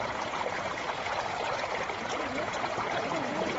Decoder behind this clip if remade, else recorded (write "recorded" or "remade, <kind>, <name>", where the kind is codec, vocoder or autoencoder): remade, vocoder, Vocos